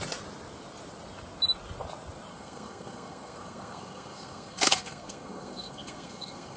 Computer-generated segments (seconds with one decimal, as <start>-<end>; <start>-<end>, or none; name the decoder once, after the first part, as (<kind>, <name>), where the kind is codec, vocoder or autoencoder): 2.3-6.6 (codec, SNAC)